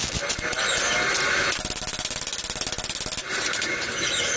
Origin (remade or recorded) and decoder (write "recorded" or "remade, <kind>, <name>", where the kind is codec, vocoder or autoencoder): recorded